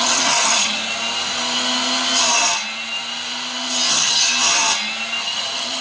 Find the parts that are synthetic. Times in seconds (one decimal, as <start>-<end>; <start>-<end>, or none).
0.0-0.8; 3.9-4.3; 5.2-5.8